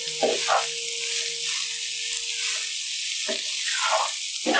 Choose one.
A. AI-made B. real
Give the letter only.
B